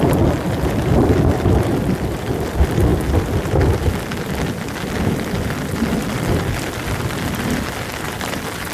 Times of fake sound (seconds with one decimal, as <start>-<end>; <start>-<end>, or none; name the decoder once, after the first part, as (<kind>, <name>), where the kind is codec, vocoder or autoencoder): 0.0-2.9 (vocoder, BigVGAN v2); 5.1-8.7